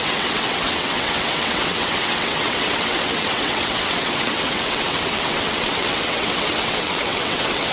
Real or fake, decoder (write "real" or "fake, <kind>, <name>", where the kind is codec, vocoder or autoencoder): fake, vocoder, WaveNeXt